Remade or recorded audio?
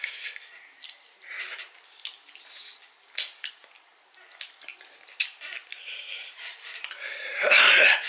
recorded